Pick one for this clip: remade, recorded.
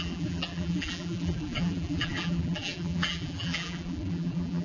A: remade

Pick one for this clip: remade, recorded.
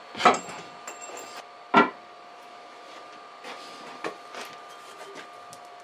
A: recorded